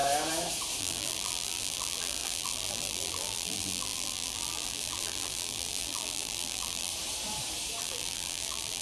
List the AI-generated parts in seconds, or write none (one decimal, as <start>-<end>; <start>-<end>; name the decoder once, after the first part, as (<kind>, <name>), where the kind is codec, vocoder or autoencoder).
0.8-6.9 (vocoder, BigVGAN v2); 7.8-8.8